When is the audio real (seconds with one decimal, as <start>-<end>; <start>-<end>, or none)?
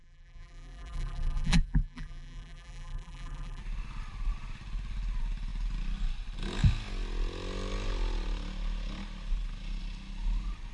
3.6-10.7